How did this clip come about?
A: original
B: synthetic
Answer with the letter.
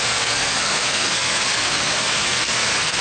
B